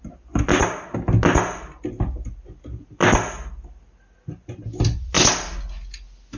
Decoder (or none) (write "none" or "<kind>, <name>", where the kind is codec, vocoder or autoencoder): none